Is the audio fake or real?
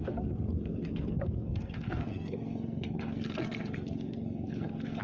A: fake